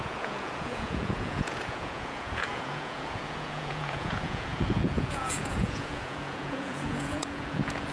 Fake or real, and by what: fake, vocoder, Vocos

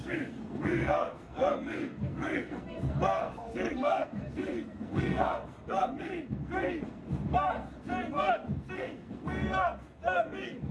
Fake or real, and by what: fake, codec, SNAC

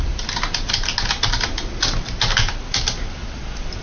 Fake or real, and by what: real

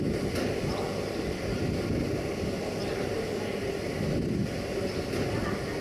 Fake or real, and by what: real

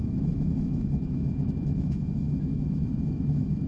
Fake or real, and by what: fake, autoencoder, DAC-VAE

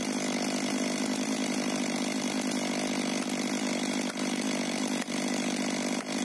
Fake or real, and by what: real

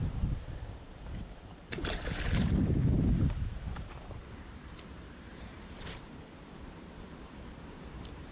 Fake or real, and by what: fake, vocoder, BigVGAN v2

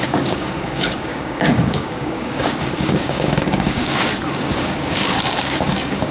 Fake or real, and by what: fake, codec, DAC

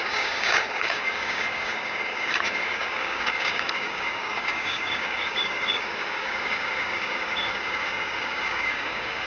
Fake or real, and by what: fake, codec, DAC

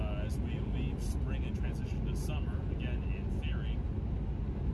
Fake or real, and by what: real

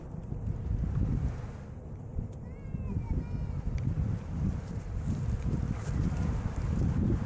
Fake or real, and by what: real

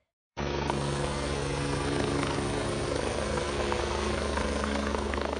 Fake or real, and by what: fake, codec, SNAC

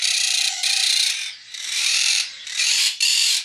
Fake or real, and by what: fake, vocoder, BigVGAN v2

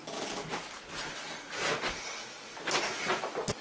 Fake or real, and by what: real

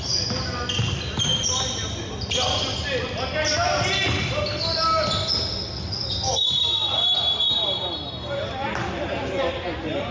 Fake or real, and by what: real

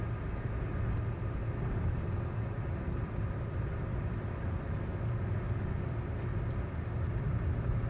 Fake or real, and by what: real